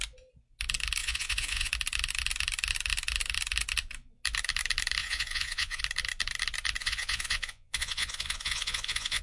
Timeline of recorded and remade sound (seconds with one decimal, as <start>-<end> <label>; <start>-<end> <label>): 0.0-1.0 recorded; 1.0-1.7 remade; 1.7-5.0 recorded; 5.0-5.8 remade; 5.8-6.8 recorded; 6.8-9.2 remade